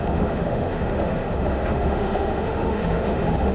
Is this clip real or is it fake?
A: fake